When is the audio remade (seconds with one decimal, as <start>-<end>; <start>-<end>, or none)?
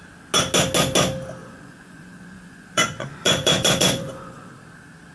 1.4-4.5